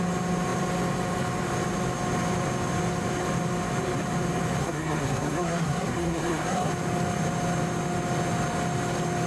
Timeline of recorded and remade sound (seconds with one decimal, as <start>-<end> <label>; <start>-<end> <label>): 0.0-4.6 recorded; 4.6-6.7 remade; 6.7-9.3 recorded